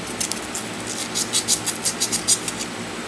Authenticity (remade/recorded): recorded